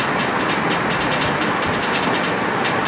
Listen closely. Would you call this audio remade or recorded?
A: recorded